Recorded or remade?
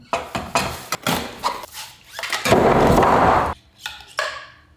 recorded